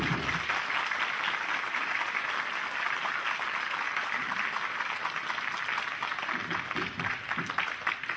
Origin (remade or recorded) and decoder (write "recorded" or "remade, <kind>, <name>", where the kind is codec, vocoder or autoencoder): recorded